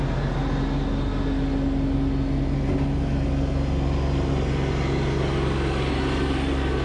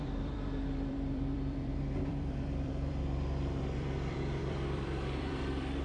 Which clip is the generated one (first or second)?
second